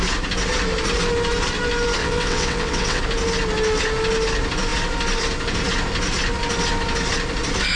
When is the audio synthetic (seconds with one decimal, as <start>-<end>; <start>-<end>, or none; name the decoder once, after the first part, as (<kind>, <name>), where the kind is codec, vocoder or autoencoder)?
2.0-3.0 (vocoder, WaveNeXt)